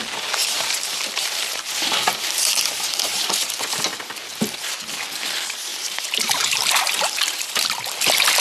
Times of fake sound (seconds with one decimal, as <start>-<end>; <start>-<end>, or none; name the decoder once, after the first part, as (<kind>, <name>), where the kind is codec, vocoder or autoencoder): 0.4-3.5 (vocoder, BigVGAN v2); 5.7-7.5